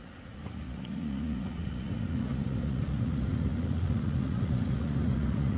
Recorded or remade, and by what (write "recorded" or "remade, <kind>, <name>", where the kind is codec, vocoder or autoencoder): remade, vocoder, Vocos